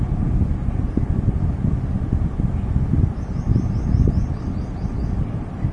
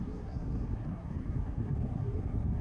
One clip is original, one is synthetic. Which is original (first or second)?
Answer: first